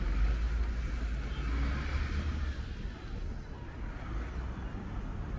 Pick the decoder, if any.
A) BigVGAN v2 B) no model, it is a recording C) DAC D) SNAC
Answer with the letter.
B